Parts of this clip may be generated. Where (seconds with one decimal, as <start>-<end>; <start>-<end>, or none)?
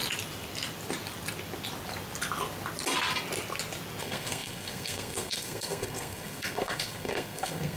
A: 4.0-7.8